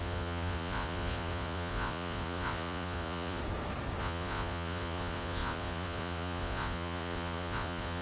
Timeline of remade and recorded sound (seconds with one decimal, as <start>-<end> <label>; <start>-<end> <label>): 0.0-3.4 remade; 3.4-4.0 recorded; 4.0-8.0 remade